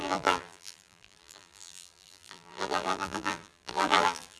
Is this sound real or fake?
fake